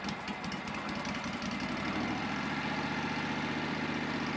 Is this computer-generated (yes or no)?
no